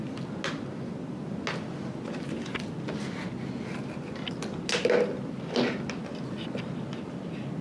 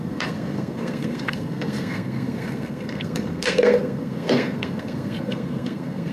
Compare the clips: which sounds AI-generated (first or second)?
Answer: second